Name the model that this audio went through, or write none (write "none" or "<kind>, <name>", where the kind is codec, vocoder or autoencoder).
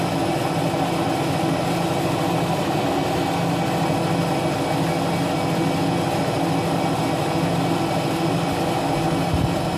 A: none